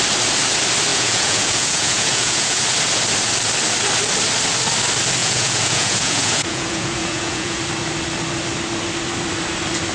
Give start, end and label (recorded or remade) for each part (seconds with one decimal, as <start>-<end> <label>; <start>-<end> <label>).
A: 0.0-0.9 recorded; 0.9-2.6 remade; 2.6-5.2 recorded; 5.2-7.6 remade; 7.6-9.9 recorded